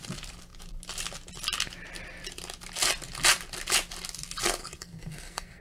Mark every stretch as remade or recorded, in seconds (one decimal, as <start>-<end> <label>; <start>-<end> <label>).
0.0-4.6 recorded; 4.6-5.6 remade

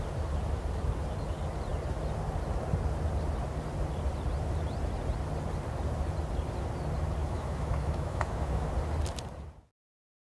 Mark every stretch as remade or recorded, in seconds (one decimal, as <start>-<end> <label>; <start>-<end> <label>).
0.0-7.2 recorded; 7.2-8.7 remade; 8.7-10.3 recorded